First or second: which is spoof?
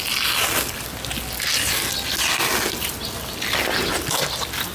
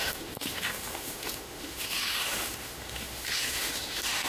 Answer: second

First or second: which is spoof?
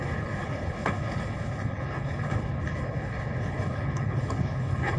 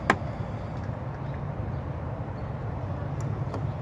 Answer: first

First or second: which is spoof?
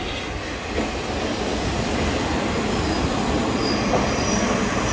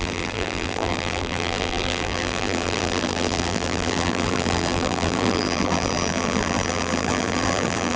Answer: second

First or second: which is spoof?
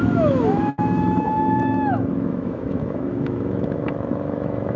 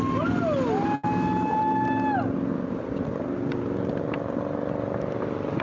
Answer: first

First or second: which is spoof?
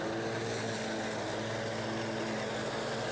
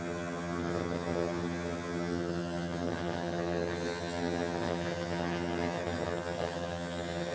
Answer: second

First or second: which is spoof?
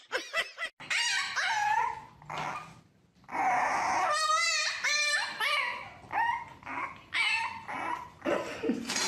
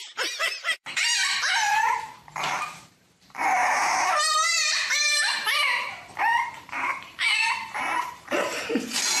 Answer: second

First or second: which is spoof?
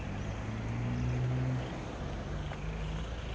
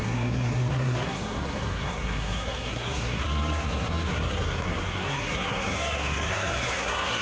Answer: second